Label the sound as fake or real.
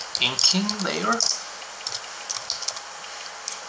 real